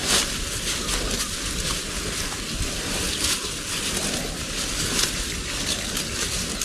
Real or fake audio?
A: real